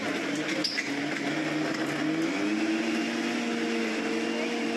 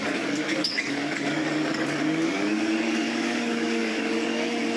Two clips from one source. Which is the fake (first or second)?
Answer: second